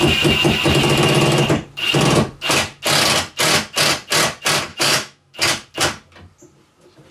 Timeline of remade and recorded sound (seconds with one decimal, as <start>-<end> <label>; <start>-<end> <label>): 0.0-4.7 recorded; 4.7-5.3 remade; 5.3-7.1 recorded